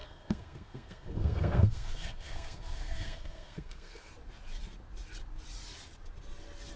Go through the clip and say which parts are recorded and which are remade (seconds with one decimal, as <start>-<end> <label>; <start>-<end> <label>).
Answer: 0.0-4.1 remade; 4.1-6.8 recorded